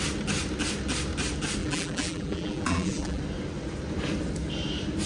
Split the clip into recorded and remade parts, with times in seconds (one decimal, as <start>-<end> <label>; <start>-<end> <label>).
0.0-1.6 recorded; 1.6-3.2 remade; 3.2-5.1 recorded